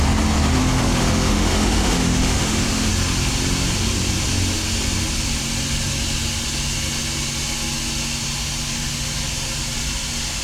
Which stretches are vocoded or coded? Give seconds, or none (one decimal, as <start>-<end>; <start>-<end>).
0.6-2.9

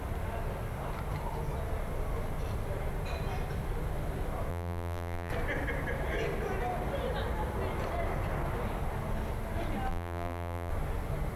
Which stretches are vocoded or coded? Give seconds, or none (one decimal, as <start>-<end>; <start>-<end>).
4.5-5.3; 9.9-10.7

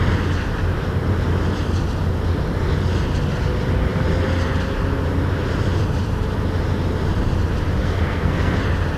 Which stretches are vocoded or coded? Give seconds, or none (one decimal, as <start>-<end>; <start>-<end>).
7.8-8.6